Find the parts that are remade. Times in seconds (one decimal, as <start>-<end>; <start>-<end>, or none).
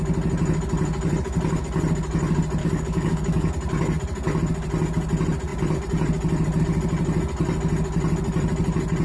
2.6-3.5